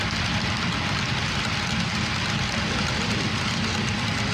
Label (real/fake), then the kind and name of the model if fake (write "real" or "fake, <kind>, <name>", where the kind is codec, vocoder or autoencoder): real